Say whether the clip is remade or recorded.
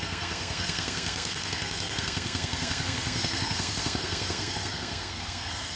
remade